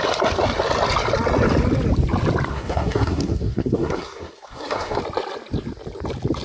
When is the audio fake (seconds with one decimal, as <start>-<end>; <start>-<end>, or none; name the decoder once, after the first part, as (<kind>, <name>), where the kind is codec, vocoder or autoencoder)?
2.5-5.0 (codec, SNAC)